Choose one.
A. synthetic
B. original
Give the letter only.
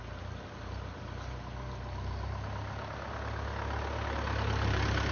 B